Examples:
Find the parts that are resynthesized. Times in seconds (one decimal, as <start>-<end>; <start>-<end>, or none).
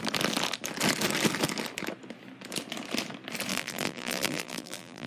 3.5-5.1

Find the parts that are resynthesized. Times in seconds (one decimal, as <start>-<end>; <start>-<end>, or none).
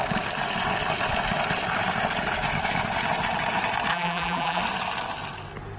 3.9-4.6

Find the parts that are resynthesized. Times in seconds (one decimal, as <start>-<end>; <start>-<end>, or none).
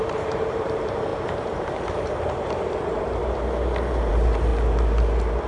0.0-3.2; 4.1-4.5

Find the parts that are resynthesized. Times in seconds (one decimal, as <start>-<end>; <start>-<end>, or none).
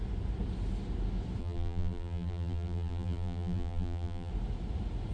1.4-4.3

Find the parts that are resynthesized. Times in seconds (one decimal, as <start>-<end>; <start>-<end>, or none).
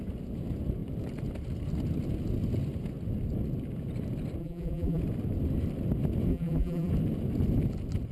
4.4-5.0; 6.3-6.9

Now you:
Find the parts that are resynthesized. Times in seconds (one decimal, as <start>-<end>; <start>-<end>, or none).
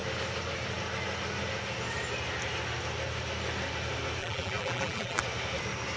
4.2-5.2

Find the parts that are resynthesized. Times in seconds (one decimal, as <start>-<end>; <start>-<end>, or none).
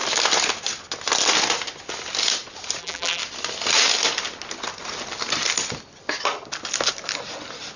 2.8-3.2